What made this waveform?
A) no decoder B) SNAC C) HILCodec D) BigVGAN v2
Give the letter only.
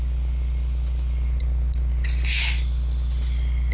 A